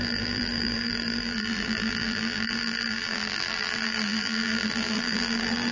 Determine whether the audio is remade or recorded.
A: remade